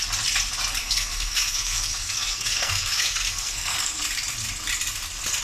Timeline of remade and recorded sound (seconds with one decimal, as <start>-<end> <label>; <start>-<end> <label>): 0.0-0.8 recorded; 0.8-4.0 remade; 4.0-5.4 recorded